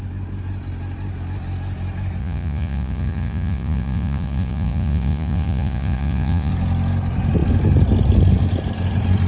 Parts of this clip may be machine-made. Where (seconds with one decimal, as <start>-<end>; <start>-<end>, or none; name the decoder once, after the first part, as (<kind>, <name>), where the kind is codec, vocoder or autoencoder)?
2.2-6.5 (vocoder, Vocos)